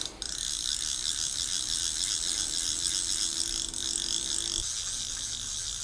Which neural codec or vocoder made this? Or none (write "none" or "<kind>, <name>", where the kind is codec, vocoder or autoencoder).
none